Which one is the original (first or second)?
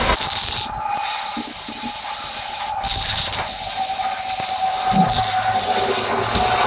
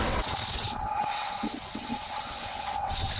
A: first